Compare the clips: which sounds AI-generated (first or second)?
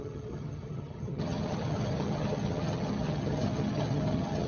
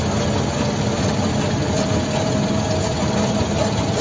first